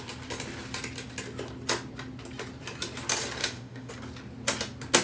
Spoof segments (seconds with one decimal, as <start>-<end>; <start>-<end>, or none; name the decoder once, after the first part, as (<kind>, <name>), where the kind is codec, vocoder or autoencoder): 3.4-3.9 (autoencoder, DAC-VAE)